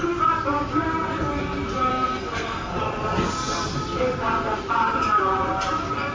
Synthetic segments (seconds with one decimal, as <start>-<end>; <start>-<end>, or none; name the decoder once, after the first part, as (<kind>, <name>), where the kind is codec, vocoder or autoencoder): 1.9-2.8 (codec, SNAC)